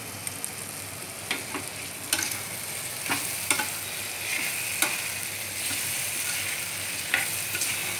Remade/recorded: recorded